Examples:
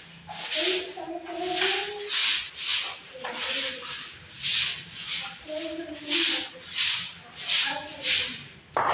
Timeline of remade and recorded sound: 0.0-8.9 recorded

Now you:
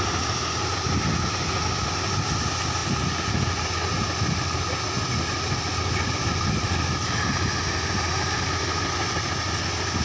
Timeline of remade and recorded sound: 0.0-10.0 recorded